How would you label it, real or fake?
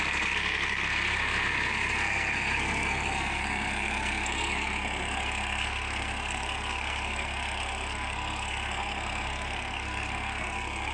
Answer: fake